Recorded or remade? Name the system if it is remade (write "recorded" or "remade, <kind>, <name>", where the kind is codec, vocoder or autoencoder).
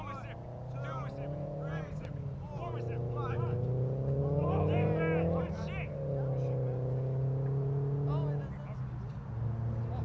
recorded